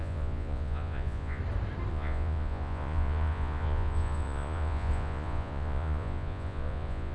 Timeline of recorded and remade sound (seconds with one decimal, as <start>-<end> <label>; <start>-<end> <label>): 0.0-1.4 remade; 1.4-1.9 recorded; 1.9-7.1 remade